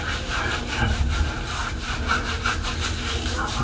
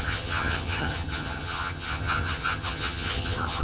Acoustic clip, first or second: first